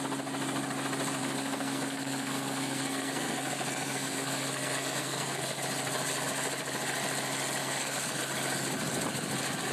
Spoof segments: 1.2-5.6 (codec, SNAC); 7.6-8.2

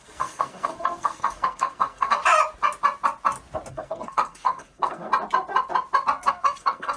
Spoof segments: 0.0-2.2 (codec, SNAC); 3.7-5.1; 6.3-7.0

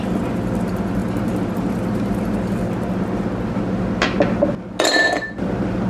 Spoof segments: none

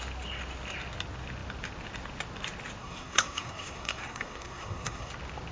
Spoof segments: 2.8-5.1 (codec, SNAC)